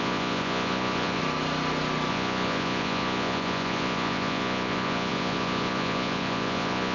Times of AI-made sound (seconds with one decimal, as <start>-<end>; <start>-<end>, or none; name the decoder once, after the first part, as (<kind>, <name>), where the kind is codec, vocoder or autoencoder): 0.0-1.2 (vocoder, Vocos); 2.1-6.9